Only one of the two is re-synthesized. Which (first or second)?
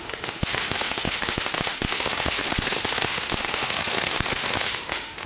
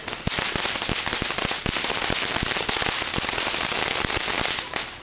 first